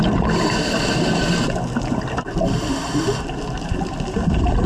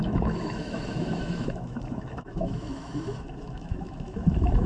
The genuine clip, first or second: first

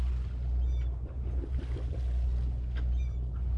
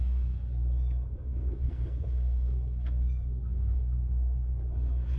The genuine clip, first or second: first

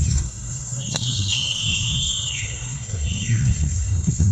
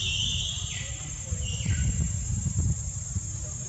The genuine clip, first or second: second